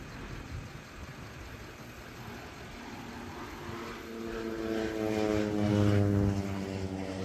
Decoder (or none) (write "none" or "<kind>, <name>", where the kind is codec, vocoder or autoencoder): none